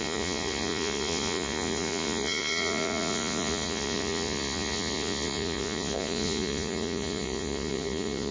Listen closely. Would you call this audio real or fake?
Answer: fake